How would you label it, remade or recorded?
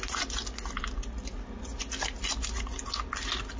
recorded